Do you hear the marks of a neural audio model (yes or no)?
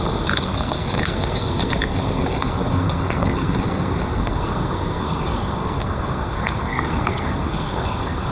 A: yes